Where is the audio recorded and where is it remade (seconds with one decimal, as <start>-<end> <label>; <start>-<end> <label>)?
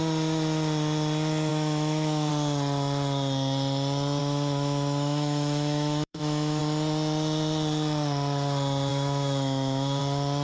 0.0-1.5 recorded; 1.5-2.3 remade; 2.3-4.2 recorded; 4.2-6.6 remade; 6.6-8.9 recorded; 8.9-10.0 remade; 10.0-10.4 recorded